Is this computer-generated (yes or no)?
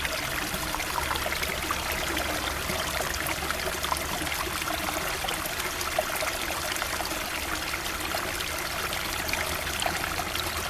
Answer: no